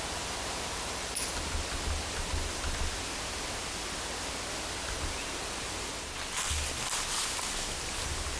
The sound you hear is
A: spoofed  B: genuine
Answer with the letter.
B